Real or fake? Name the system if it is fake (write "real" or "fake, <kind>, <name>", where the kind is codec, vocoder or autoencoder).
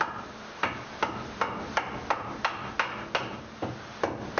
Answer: real